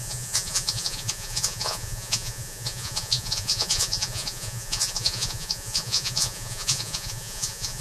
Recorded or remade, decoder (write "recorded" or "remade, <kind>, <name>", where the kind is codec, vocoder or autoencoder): remade, vocoder, Vocos